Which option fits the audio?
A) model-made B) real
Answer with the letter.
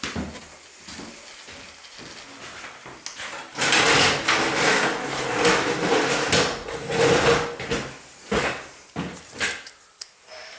B